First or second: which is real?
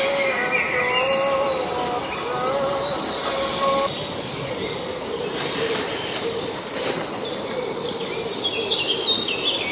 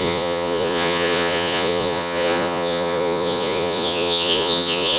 first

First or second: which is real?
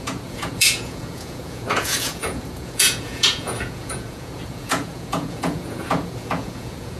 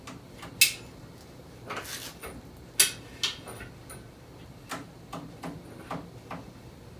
second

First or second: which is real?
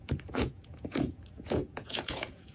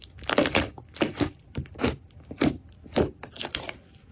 second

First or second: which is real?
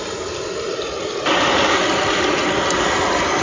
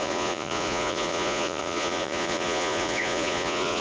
first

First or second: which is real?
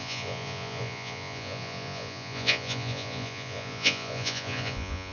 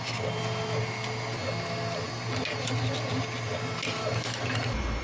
second